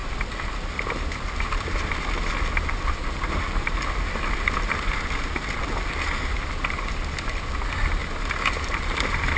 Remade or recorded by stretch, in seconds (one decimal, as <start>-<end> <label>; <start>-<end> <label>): 0.0-9.4 recorded